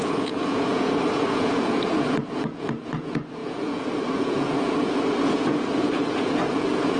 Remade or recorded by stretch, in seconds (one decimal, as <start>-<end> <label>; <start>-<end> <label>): 0.0-7.0 remade